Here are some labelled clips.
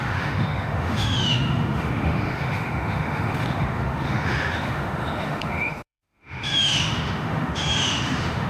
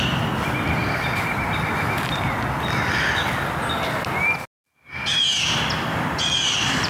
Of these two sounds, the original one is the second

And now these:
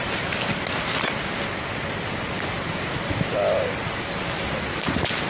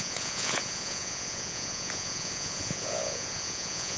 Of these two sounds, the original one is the first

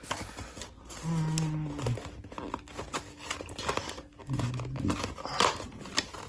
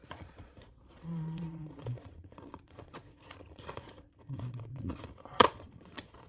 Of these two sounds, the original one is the first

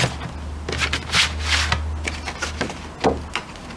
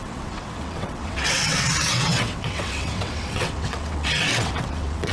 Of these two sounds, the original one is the first